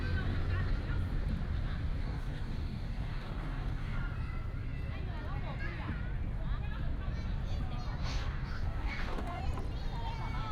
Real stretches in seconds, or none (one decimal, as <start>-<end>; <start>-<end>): 0.0-2.0; 4.0-8.0; 9.4-10.5